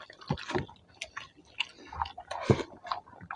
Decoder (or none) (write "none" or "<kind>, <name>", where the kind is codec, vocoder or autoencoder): none